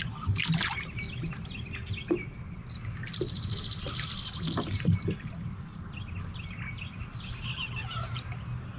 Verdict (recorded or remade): recorded